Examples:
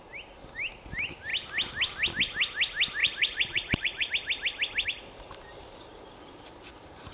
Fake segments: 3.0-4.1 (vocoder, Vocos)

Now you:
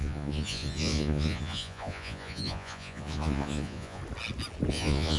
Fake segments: 0.0-4.0 (vocoder, Vocos); 4.7-5.2

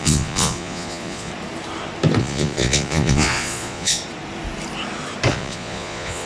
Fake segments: 0.0-1.3 (vocoder, Vocos); 2.2-4.0; 5.3-6.3

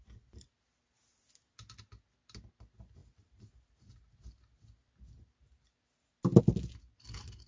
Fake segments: none

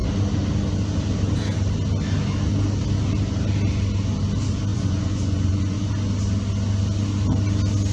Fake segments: 4.7-5.9 (vocoder, Vocos)

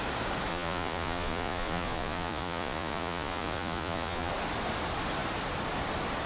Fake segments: 0.5-4.3 (vocoder, Vocos)